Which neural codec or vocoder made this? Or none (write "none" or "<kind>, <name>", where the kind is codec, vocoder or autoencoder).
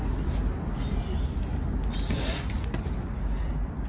none